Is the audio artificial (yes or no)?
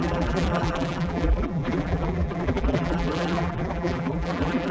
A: yes